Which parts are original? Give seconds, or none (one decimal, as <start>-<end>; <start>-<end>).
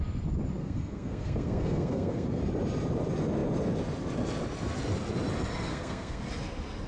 0.0-0.6; 2.4-5.7; 6.2-6.9